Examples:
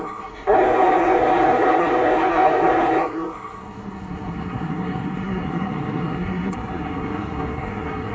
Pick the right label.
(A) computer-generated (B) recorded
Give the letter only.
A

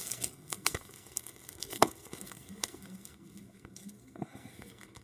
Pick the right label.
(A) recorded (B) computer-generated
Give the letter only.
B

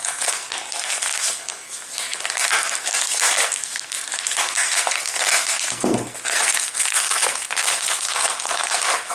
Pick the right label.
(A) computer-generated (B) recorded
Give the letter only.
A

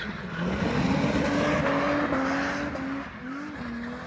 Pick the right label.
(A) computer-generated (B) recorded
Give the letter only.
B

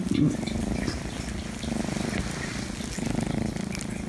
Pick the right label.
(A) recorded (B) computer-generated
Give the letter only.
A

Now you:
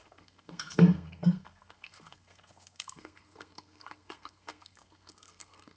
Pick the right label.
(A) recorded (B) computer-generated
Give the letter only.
B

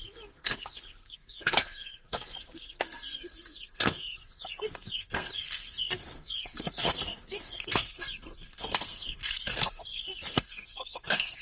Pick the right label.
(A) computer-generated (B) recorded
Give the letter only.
A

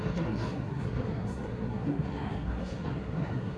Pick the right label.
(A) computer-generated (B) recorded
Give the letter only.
A